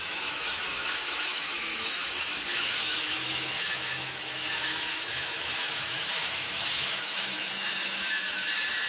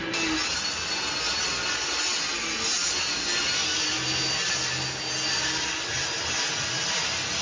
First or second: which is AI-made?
first